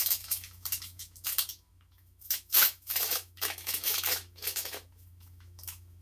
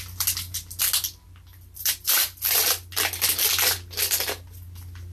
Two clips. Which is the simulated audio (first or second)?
first